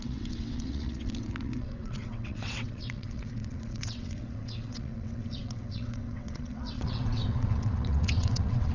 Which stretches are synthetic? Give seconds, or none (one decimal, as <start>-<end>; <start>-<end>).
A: 0.0-8.7